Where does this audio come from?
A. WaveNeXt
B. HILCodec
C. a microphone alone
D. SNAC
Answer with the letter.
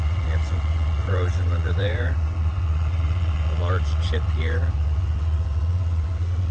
A